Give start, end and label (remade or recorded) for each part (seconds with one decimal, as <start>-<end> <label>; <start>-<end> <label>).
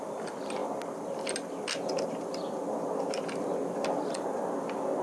0.0-5.0 recorded